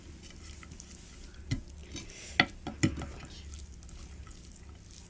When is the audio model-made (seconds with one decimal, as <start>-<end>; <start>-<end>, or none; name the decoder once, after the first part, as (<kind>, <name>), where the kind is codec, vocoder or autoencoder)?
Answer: none